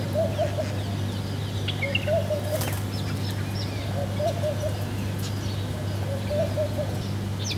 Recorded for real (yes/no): yes